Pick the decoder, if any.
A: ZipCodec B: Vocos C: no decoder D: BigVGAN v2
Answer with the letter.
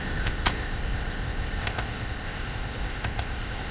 A